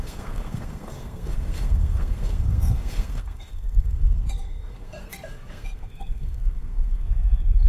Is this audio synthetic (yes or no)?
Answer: yes